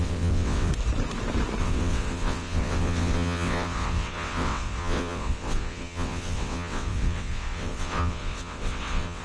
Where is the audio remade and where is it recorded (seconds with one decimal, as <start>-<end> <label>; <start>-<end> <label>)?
0.0-0.7 remade; 0.7-1.6 recorded; 1.6-9.2 remade